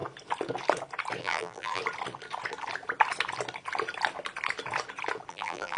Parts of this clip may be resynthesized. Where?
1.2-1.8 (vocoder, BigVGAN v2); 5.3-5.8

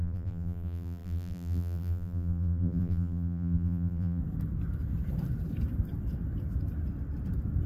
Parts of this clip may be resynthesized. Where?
0.0-4.2 (vocoder, BigVGAN v2)

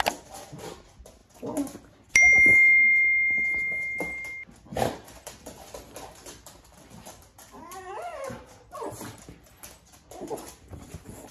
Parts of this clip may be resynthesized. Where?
4.7-7.8 (vocoder, BigVGAN v2)